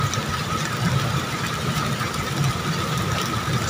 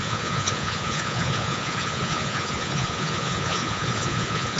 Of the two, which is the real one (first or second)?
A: first